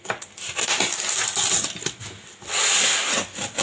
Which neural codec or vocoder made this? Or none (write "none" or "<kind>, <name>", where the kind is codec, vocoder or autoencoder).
none